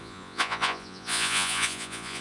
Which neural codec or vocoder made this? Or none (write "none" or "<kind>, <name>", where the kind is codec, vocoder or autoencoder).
vocoder, Vocos